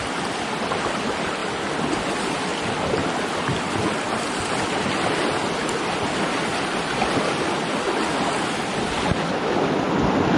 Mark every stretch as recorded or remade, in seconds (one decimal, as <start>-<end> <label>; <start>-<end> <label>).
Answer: 0.0-10.4 recorded